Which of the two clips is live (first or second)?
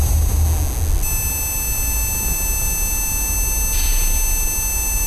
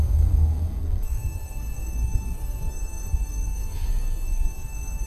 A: first